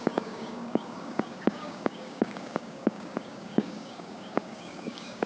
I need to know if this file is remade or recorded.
remade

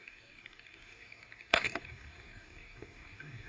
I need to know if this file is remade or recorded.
remade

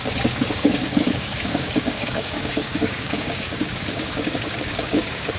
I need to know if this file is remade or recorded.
remade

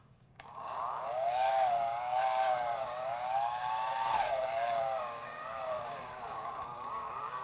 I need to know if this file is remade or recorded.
remade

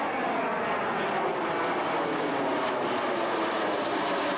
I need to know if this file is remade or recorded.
recorded